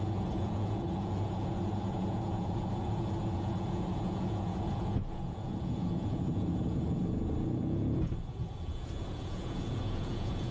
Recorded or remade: remade